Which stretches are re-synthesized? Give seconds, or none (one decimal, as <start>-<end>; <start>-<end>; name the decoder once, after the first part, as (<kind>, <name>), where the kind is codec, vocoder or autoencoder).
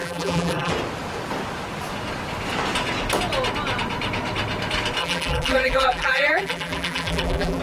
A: 0.0-0.7 (vocoder, BigVGAN v2); 5.0-7.6